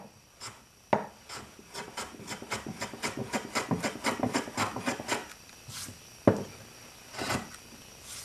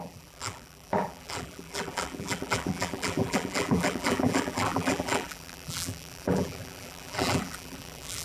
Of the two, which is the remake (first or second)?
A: second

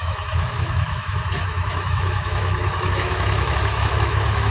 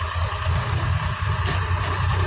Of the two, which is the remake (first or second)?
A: first